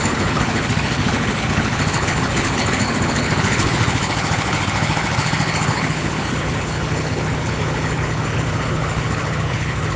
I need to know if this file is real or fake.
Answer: fake